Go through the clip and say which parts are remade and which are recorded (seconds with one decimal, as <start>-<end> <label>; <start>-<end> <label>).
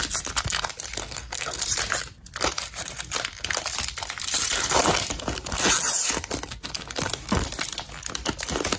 0.0-1.0 recorded; 1.0-1.6 remade; 1.6-8.8 recorded